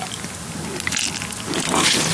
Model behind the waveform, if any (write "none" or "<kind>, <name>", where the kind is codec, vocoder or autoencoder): none